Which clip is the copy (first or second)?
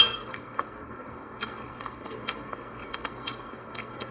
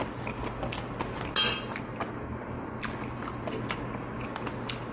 first